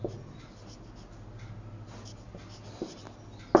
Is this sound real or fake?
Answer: real